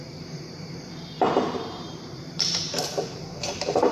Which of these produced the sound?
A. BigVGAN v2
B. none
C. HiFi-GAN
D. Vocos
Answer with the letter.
A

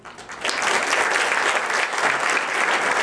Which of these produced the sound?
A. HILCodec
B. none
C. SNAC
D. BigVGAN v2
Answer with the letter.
B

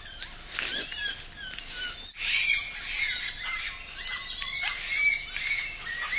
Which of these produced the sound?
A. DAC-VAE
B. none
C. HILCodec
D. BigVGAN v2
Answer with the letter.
B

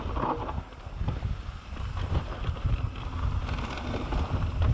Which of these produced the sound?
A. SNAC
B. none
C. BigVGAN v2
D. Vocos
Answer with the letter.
B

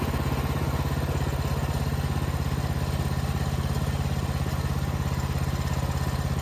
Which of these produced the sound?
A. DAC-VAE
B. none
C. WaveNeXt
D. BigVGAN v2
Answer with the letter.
B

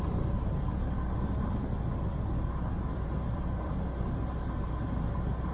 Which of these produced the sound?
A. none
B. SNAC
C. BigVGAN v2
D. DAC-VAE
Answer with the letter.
A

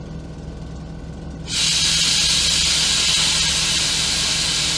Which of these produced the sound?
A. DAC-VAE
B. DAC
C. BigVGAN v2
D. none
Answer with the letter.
D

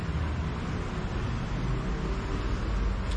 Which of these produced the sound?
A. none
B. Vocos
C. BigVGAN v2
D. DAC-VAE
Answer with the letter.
A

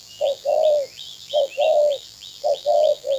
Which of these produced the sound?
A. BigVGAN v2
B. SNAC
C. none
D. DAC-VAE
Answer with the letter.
A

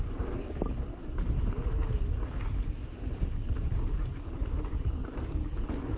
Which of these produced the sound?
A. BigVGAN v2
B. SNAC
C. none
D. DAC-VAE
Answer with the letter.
C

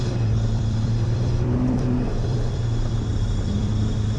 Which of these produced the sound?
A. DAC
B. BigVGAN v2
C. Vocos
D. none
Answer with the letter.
B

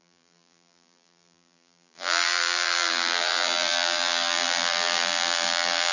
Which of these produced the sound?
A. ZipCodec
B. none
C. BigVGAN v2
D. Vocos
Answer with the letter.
C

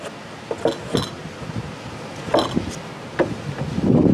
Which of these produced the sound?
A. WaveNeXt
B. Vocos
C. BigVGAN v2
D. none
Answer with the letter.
D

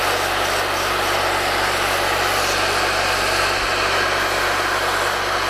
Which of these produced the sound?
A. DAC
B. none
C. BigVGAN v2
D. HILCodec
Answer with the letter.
B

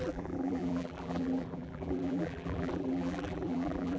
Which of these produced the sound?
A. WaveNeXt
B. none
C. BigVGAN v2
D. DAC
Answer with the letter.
C